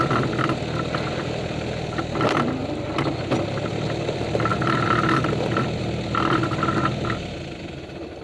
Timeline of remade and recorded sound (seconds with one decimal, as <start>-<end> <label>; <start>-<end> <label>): 0.0-4.5 recorded; 4.5-7.3 remade; 7.3-8.2 recorded